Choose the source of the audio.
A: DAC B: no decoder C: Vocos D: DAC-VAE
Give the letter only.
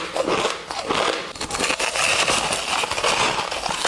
B